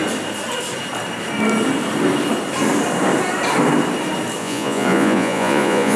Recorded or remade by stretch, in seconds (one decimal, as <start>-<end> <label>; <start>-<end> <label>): 0.0-4.4 recorded; 4.4-6.0 remade